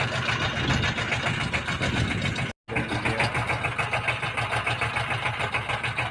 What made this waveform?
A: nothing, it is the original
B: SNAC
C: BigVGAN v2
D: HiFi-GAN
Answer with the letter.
A